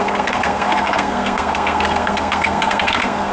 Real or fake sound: fake